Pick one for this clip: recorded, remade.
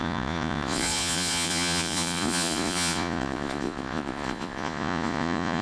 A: remade